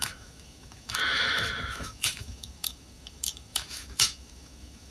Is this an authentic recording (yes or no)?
no